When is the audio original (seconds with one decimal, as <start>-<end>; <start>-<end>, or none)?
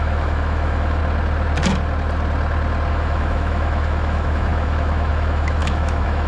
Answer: 1.0-2.9